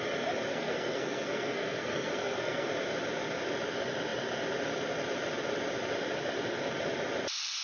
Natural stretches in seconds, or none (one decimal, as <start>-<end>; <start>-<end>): 0.0-0.5; 2.7-7.6